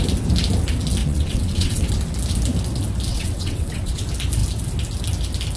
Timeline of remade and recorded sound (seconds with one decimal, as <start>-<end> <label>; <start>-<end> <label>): 0.0-1.0 recorded; 1.0-1.9 remade; 1.9-3.1 recorded; 3.1-4.0 remade; 4.0-5.6 recorded